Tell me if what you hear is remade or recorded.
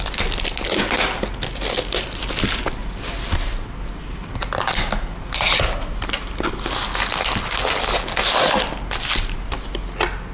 recorded